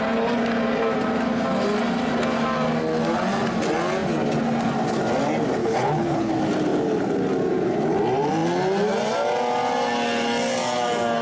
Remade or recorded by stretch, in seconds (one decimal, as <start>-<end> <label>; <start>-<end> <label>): 0.0-5.6 recorded; 5.6-6.3 remade; 6.3-11.2 recorded